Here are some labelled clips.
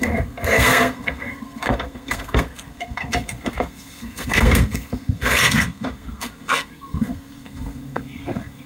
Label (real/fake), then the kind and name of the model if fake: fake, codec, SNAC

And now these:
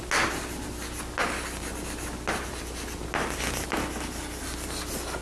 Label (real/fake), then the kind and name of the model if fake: real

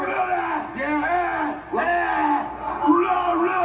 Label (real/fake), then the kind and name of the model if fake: real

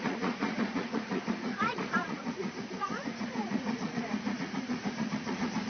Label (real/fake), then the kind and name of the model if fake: fake, vocoder, Vocos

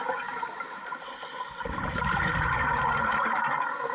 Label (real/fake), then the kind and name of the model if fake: real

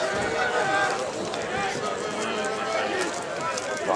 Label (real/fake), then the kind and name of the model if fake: real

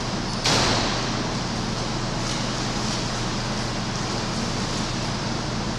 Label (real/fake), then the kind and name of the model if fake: real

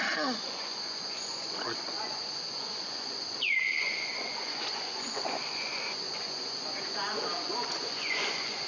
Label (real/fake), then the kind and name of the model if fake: fake, vocoder, Vocos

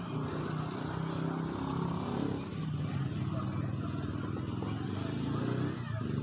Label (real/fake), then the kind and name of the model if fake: real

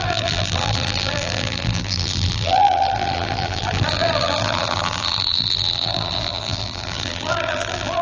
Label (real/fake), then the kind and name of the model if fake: fake, vocoder, BigVGAN v2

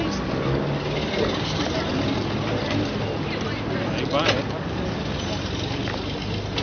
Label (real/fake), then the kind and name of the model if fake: real